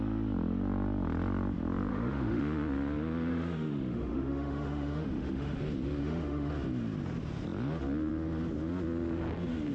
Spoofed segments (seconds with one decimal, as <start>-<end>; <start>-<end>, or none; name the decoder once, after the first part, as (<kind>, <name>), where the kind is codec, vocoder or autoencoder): 1.9-2.4 (autoencoder, DAC-VAE); 3.3-5.6; 6.0-6.5